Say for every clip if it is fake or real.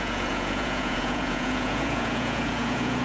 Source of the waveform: fake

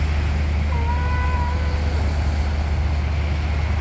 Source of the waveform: real